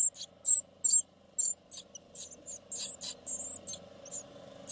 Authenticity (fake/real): real